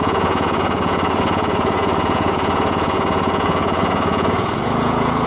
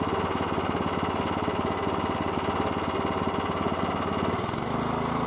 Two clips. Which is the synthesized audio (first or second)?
first